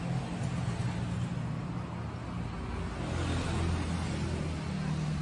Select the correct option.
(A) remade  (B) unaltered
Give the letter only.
B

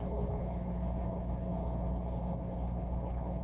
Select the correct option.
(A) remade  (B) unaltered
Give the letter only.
A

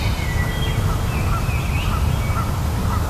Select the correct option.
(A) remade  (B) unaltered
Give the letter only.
B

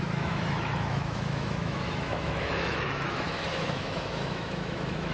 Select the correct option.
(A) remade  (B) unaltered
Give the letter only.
A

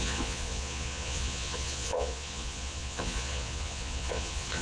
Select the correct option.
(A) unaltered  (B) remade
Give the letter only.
B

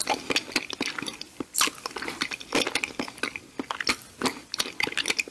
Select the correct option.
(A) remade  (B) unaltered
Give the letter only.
B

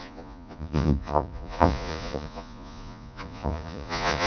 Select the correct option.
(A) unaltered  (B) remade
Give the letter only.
B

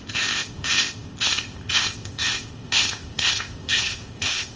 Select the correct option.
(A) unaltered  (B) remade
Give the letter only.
B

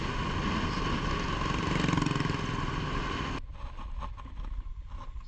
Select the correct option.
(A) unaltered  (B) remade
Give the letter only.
A